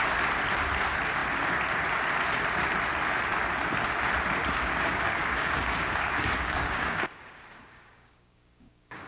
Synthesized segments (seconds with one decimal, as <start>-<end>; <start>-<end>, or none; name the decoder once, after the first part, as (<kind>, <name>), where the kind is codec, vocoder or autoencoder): 4.7-9.1 (codec, DAC)